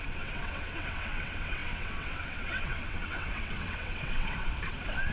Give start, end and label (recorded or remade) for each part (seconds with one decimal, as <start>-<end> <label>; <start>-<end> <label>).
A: 0.0-5.1 remade